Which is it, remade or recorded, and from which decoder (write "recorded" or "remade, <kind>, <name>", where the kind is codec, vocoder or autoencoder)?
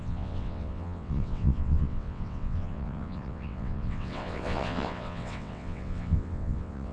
remade, vocoder, WaveNeXt